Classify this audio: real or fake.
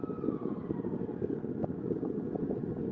real